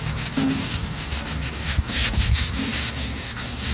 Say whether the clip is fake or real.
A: fake